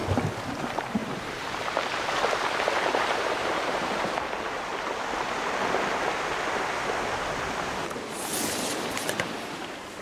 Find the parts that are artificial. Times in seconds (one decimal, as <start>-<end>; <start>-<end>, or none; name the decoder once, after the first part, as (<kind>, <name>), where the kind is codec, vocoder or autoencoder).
0.6-4.7 (vocoder, BigVGAN v2); 8.9-10.0